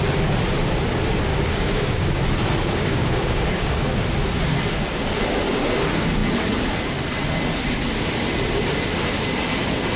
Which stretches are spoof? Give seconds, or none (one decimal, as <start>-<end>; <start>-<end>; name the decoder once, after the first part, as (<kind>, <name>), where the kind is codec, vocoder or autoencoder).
1.3-2.2 (codec, DAC); 2.6-3.9